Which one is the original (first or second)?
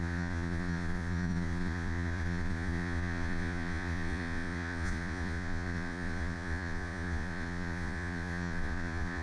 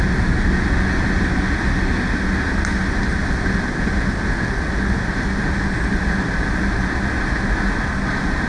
second